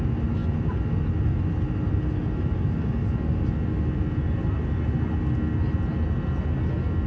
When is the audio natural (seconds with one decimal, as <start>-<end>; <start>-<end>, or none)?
0.0-7.1

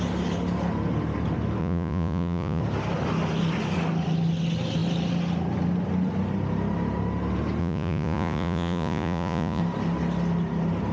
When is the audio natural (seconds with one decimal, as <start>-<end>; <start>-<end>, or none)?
0.0-1.6; 2.6-7.6; 9.6-10.9